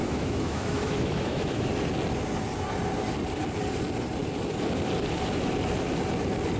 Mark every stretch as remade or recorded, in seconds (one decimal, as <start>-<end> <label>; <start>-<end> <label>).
0.0-1.7 remade; 1.7-6.6 recorded